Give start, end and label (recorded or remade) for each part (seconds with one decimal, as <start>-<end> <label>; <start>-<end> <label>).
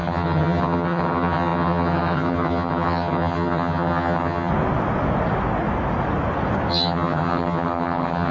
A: 0.0-4.5 remade; 4.5-6.7 recorded; 6.7-8.3 remade